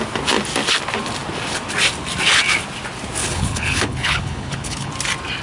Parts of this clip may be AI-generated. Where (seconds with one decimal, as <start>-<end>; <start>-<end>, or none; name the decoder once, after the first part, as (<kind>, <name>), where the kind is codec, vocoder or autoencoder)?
3.2-4.9 (codec, HILCodec)